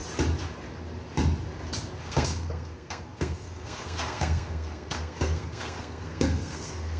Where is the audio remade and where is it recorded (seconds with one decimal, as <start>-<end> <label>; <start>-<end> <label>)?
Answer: 0.0-2.0 recorded; 2.0-7.0 remade